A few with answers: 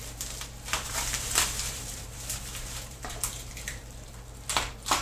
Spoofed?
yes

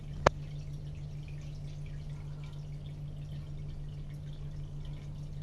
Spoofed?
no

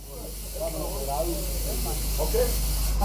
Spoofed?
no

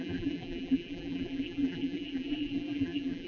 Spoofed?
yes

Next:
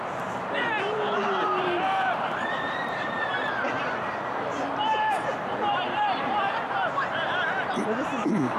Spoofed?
yes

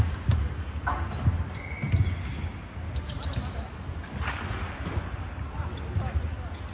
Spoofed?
no